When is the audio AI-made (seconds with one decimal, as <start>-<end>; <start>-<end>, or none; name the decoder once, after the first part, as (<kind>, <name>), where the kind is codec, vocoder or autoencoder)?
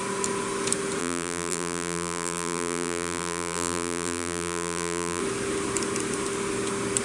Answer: 1.0-5.2 (vocoder, BigVGAN v2)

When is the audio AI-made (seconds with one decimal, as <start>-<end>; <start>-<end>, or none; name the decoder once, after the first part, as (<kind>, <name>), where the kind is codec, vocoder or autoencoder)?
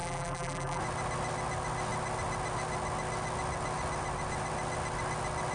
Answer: 0.0-0.8 (vocoder, BigVGAN v2)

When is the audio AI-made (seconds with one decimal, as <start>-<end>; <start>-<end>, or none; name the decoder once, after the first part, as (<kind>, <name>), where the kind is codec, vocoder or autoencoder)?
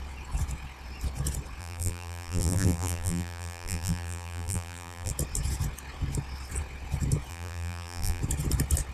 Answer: 1.6-5.1 (vocoder, BigVGAN v2); 7.3-8.2